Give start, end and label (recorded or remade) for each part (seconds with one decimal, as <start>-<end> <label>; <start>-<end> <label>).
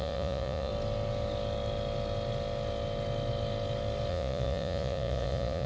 0.0-0.7 remade; 0.7-4.1 recorded; 4.1-5.7 remade